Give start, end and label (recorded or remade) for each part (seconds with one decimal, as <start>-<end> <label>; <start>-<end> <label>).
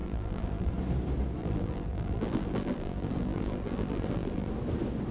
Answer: 0.0-0.7 remade; 0.7-1.4 recorded; 1.4-4.5 remade; 4.5-5.1 recorded